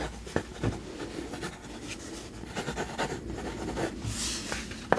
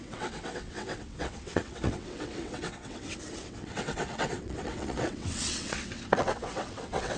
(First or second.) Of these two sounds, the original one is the first